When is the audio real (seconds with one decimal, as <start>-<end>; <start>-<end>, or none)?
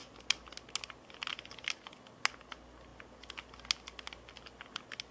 0.0-5.1